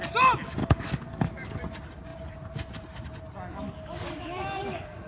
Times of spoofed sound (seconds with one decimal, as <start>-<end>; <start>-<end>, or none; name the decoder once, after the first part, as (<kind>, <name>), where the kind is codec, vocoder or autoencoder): 0.6-1.6 (codec, DAC); 3.5-5.1